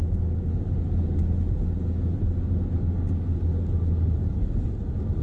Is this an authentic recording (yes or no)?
yes